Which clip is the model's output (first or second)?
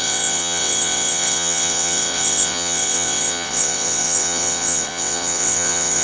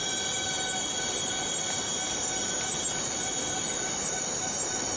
first